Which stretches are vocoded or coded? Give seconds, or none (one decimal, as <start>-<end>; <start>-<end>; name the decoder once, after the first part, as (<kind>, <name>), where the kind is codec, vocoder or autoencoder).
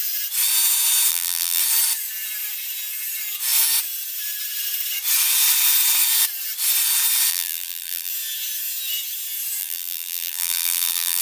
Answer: 1.1-1.6 (vocoder, BigVGAN v2); 7.3-8.1; 9.6-11.2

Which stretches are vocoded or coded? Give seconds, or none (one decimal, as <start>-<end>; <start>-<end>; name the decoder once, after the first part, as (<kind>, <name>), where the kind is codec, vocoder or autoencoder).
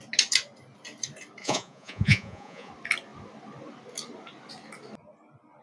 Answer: 1.4-2.7 (vocoder, Vocos)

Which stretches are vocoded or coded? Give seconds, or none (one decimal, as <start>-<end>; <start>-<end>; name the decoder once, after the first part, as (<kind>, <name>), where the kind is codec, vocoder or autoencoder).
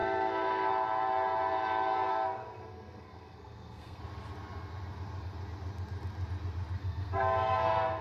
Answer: 0.0-0.7 (codec, SNAC); 2.1-4.0; 6.8-8.0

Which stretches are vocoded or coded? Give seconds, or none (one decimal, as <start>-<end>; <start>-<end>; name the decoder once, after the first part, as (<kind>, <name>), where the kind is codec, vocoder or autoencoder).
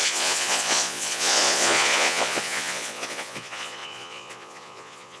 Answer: 0.0-5.2 (vocoder, Vocos)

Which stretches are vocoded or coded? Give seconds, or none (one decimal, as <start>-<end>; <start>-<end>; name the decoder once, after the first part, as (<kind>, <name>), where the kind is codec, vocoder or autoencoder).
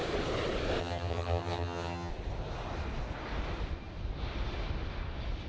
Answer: 0.8-2.1 (vocoder, HiFi-GAN)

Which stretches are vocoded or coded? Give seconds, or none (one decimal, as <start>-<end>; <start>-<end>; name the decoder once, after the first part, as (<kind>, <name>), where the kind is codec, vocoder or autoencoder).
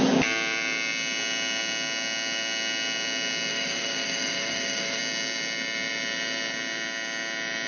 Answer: 3.5-5.0 (codec, DAC)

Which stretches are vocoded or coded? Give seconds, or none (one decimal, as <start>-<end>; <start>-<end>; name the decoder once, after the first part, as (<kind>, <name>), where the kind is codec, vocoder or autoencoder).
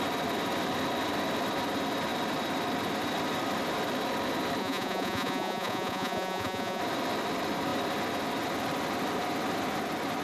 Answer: 4.6-6.8 (vocoder, Vocos)